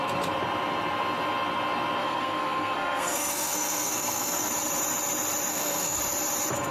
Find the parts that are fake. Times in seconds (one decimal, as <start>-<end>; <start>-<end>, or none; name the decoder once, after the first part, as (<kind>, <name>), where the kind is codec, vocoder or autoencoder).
2.0-4.5 (codec, SNAC); 5.5-6.0